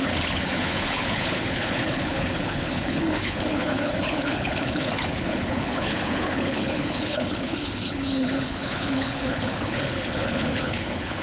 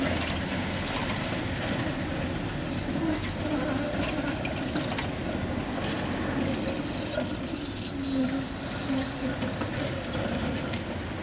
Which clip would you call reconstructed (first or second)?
first